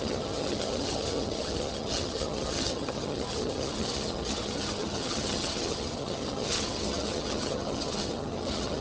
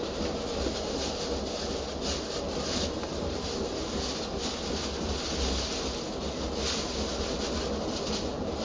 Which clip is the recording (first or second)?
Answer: second